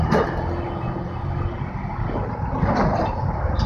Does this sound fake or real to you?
real